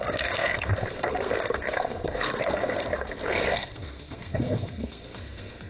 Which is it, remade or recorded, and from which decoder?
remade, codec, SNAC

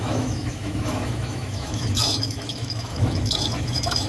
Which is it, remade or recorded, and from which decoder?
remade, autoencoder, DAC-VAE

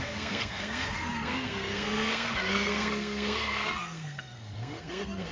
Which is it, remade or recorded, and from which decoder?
remade, codec, SNAC